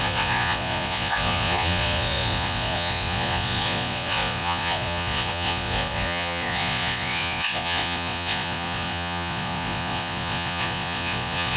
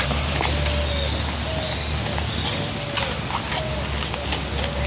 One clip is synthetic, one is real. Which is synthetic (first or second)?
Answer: first